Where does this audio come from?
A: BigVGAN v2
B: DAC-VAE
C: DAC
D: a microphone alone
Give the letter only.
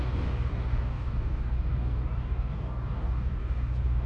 C